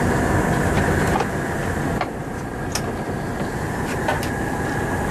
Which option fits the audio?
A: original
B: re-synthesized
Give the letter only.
A